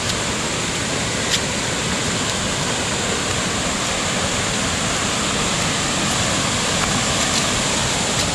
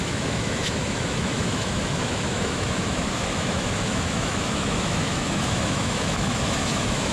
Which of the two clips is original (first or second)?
first